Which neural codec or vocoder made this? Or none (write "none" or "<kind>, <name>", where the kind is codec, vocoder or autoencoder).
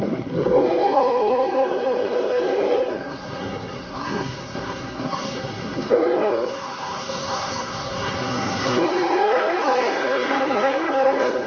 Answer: codec, SNAC